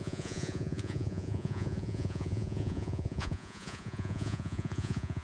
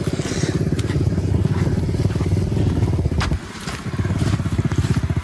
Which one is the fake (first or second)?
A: first